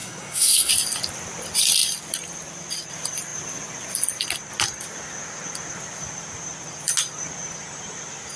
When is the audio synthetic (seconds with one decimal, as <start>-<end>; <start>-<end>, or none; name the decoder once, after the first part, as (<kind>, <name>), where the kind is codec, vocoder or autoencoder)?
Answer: 0.0-0.7 (codec, SNAC)

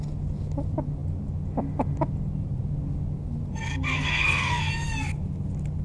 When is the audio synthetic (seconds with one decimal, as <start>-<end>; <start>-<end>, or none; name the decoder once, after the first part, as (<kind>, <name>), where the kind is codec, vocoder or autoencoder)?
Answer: 3.7-4.6 (codec, SNAC)

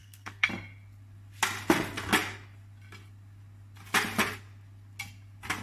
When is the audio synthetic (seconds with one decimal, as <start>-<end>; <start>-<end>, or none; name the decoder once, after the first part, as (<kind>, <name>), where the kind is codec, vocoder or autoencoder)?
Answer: 0.0-0.5 (codec, SNAC)

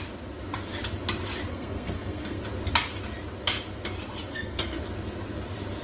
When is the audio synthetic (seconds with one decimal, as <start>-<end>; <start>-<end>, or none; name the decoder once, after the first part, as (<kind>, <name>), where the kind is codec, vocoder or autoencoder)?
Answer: 1.5-2.4 (codec, SNAC); 4.3-4.8